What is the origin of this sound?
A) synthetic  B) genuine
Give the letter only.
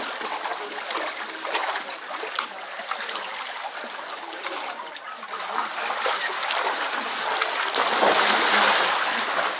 B